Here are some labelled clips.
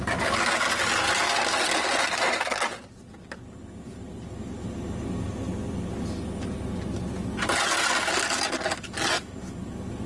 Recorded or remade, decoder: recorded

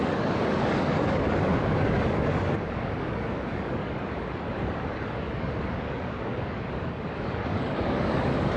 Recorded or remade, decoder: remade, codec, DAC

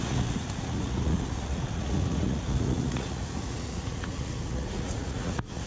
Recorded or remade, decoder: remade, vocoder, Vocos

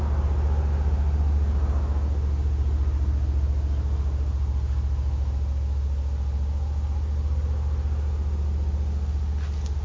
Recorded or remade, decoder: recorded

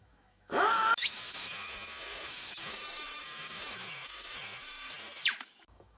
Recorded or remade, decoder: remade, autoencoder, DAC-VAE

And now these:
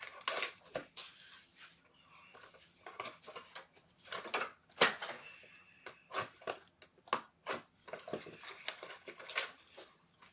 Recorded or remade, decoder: recorded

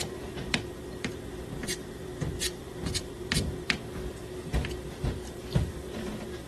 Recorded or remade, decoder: remade, vocoder, BigVGAN v2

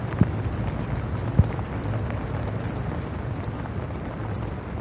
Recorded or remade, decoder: recorded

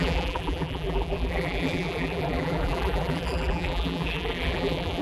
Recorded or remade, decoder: remade, vocoder, BigVGAN v2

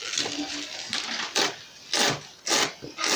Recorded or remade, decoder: recorded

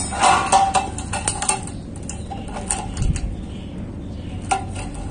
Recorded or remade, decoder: recorded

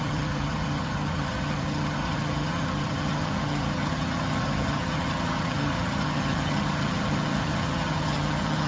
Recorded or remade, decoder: remade, vocoder, HiFi-GAN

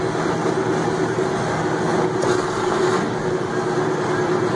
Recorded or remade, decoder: recorded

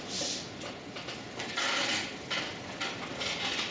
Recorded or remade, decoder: recorded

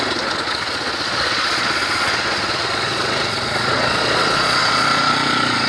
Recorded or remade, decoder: remade, vocoder, Vocos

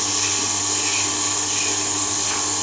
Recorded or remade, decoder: recorded